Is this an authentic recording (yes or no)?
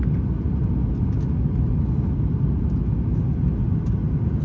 yes